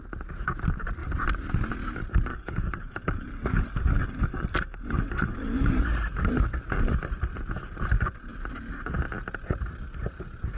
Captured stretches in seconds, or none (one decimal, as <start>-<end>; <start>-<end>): 0.0-2.3; 5.8-10.6